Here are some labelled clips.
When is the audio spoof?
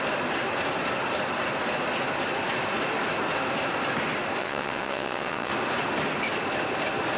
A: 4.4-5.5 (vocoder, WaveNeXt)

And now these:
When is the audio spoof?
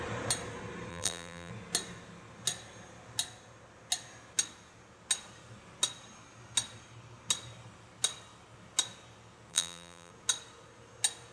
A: 0.9-1.5 (vocoder, BigVGAN v2); 9.5-10.1